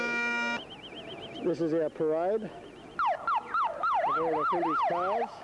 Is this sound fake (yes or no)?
no